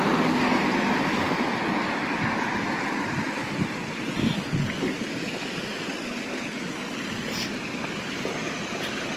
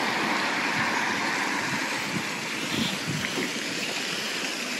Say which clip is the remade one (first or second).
second